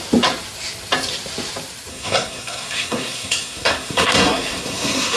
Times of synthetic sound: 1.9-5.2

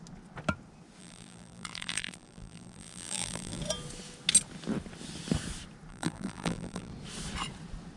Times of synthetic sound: 1.0-3.6; 5.9-6.9

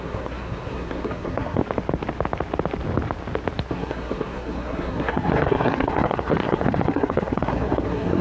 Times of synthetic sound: 0.0-1.6; 3.7-8.2

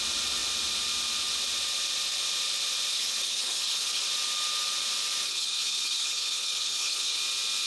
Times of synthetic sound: 2.9-4.0; 5.2-7.2

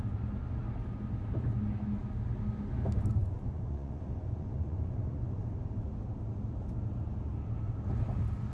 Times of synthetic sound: 3.2-5.4

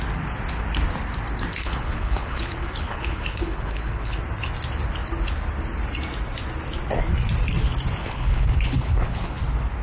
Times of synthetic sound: 1.5-4.2; 8.0-9.4

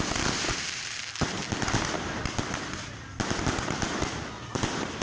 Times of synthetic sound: 0.0-1.4; 4.4-5.0

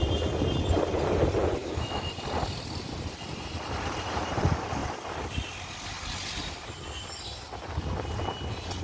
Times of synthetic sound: 1.6-2.1